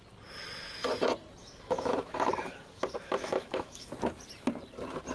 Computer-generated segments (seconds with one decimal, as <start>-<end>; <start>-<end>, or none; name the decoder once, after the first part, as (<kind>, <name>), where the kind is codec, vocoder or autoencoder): 1.4-3.9 (autoencoder, DAC-VAE)